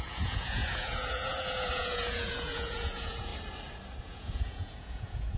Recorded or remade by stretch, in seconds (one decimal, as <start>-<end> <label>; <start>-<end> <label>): 0.0-3.3 remade; 3.3-4.0 recorded; 4.0-5.4 remade